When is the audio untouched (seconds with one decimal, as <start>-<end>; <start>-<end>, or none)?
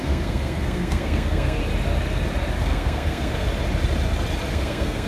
1.6-2.6; 3.5-4.5